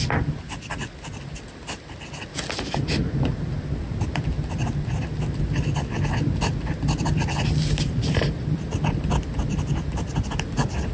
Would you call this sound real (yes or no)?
yes